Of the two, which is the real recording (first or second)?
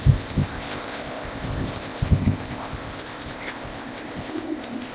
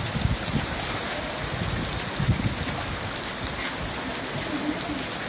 second